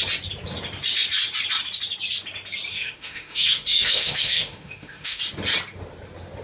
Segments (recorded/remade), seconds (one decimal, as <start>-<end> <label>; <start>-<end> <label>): 0.0-2.7 recorded; 2.7-5.2 remade; 5.2-6.4 recorded